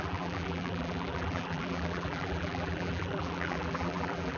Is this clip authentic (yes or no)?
no